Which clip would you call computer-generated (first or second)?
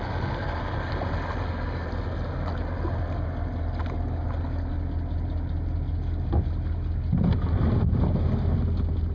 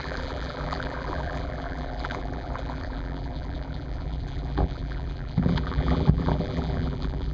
second